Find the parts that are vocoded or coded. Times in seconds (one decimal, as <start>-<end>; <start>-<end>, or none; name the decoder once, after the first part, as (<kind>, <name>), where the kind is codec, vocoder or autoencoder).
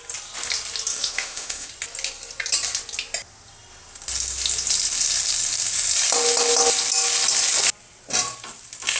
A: 0.9-1.7 (autoencoder, DAC-VAE)